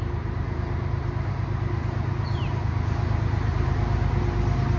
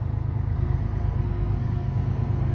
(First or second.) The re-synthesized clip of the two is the second